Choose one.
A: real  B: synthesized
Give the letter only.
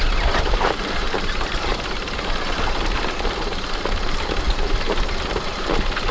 A